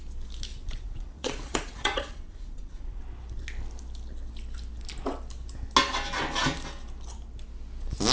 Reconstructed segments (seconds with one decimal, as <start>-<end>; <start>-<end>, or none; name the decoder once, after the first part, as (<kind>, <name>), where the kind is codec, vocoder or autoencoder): 0.5-3.0 (vocoder, Vocos)